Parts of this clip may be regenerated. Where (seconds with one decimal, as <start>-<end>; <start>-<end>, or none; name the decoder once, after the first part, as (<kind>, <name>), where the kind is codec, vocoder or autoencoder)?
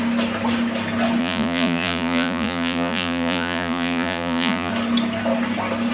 1.2-4.7 (vocoder, Vocos)